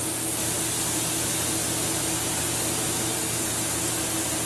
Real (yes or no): yes